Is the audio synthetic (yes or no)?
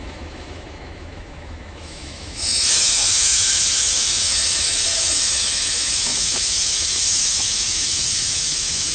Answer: yes